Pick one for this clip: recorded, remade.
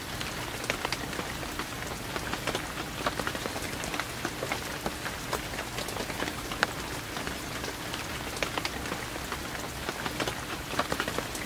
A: recorded